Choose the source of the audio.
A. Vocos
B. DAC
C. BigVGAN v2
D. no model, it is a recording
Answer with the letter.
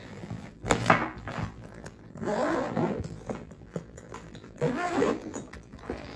C